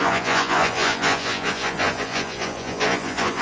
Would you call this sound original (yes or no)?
no